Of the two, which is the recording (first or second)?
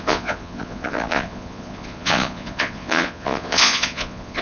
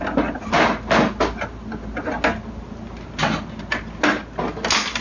second